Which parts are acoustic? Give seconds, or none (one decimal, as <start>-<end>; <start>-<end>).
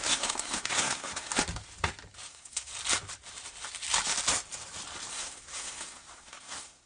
1.3-2.3; 2.7-5.1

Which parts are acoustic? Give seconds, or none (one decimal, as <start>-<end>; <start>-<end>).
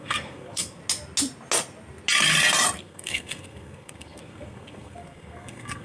0.8-2.8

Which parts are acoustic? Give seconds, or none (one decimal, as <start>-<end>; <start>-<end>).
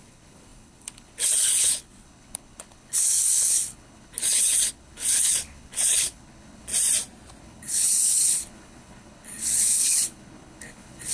6.7-7.4